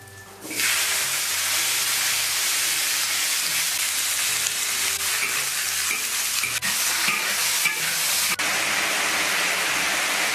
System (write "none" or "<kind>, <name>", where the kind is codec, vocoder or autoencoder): none